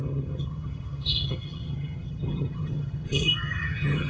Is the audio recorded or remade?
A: remade